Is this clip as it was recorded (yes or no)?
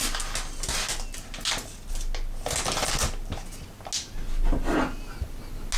yes